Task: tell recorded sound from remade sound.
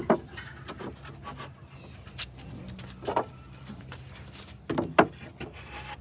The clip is recorded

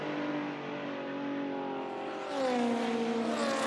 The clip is recorded